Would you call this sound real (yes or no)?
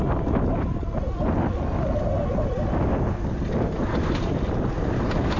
yes